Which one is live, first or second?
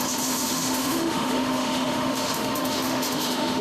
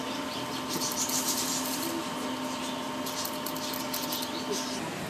second